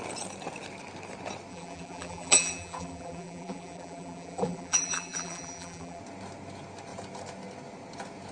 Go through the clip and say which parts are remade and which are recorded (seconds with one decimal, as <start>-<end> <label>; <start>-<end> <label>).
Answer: 0.0-1.5 recorded; 1.5-6.0 remade; 6.0-8.3 recorded